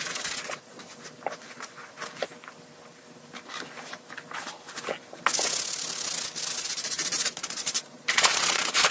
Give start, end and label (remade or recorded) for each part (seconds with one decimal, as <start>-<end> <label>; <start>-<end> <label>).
0.0-0.8 remade; 0.8-1.4 recorded; 1.4-1.8 remade; 1.8-6.6 recorded; 6.6-8.9 remade